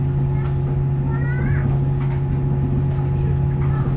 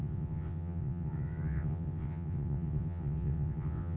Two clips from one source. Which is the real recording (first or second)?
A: first